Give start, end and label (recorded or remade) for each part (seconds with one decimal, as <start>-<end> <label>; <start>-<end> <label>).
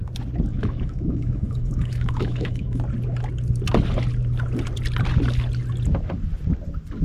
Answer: 0.0-0.5 recorded; 0.5-2.8 remade; 2.8-7.0 recorded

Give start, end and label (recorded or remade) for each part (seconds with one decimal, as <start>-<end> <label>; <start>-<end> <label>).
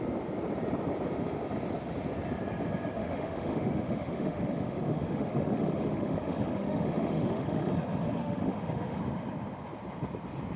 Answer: 0.0-3.0 recorded; 3.0-7.7 remade; 7.7-8.2 recorded; 8.2-9.0 remade; 9.0-10.6 recorded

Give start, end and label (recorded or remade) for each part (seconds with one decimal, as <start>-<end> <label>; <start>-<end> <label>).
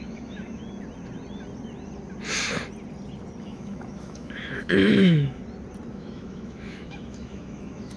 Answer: 0.0-0.6 remade; 0.6-3.4 recorded; 3.4-5.4 remade; 5.4-5.9 recorded; 5.9-8.0 remade